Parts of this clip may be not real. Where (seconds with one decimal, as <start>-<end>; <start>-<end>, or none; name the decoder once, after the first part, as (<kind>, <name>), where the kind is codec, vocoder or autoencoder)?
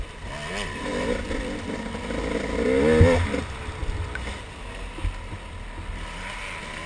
none